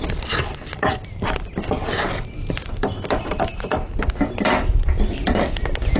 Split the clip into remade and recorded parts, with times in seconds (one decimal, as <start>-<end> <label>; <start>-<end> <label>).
0.0-6.0 recorded